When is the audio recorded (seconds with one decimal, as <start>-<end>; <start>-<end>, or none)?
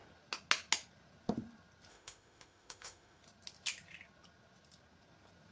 0.0-1.9; 3.2-5.5